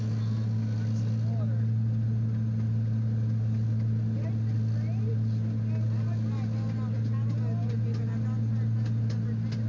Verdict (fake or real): real